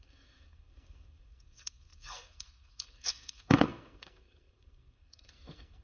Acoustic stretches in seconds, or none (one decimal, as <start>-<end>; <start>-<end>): none